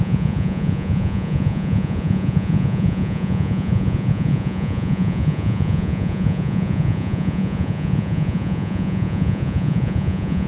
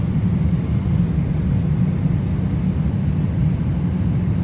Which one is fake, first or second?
first